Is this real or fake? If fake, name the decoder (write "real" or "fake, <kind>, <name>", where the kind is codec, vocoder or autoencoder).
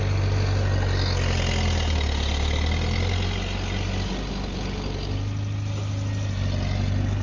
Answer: real